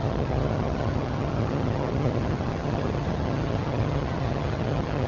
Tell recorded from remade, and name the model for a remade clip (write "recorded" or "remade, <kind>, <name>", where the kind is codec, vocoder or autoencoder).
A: remade, vocoder, HiFi-GAN